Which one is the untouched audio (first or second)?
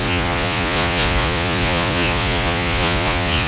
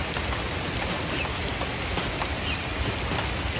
second